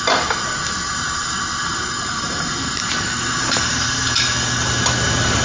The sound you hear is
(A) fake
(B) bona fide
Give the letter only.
B